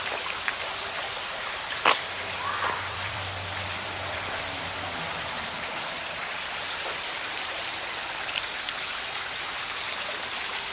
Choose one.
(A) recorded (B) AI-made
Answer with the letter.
B